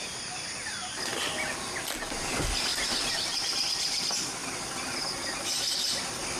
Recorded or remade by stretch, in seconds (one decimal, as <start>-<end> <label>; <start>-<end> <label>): 0.0-2.7 recorded; 2.7-4.0 remade; 4.0-6.4 recorded